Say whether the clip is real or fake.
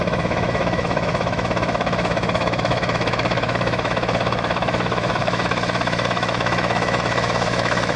fake